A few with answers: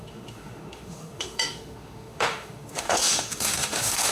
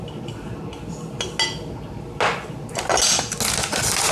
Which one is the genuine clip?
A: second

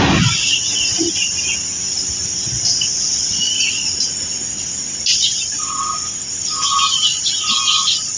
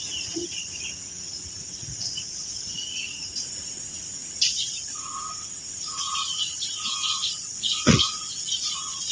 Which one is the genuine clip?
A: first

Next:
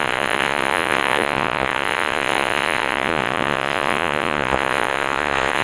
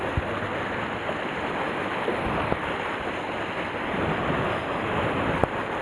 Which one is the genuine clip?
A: second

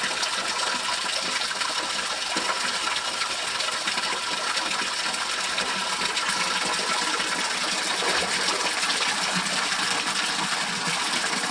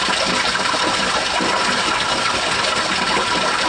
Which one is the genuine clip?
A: first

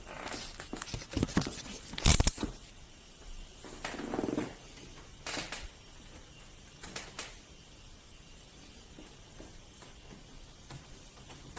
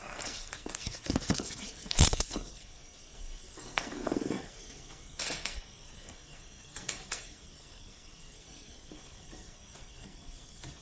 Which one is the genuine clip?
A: first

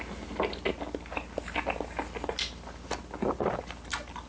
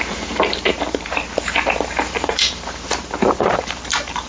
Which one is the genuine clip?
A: first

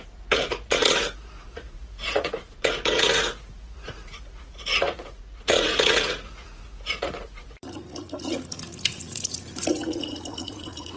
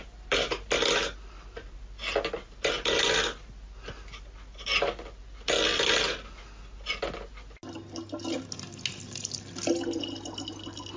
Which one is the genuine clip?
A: second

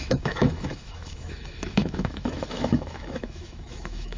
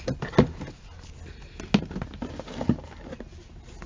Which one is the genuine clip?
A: second